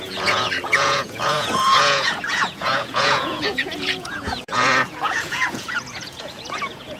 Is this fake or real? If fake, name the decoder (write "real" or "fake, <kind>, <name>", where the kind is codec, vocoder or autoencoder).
fake, vocoder, Vocos